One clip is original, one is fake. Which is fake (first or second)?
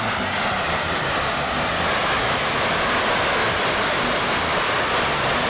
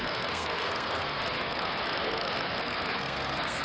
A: second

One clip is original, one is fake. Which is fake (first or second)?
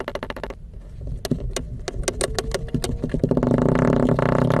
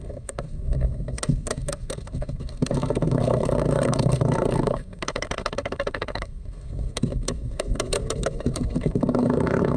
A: second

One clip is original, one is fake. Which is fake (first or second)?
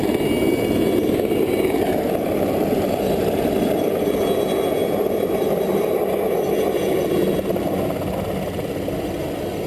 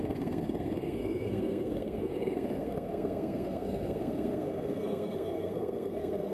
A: second